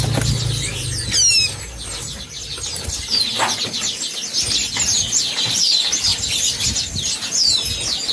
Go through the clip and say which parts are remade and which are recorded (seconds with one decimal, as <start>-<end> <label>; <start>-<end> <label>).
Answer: 0.0-8.1 recorded